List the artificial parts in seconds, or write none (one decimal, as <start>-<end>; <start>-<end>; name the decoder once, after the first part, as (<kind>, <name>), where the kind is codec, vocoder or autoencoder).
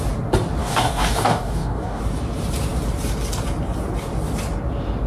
0.6-2.0 (codec, DAC)